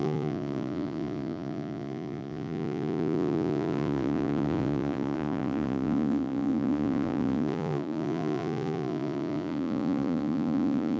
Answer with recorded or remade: remade